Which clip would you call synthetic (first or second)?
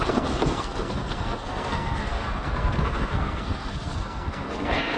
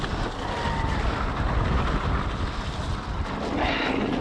first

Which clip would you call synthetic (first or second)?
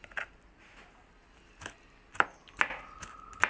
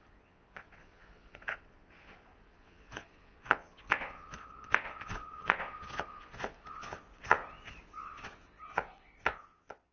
second